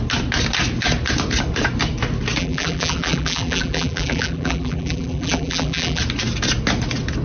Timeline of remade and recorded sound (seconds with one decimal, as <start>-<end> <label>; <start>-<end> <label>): 0.0-2.4 recorded; 2.4-6.0 remade; 6.0-7.2 recorded